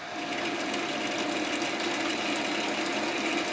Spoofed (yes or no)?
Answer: no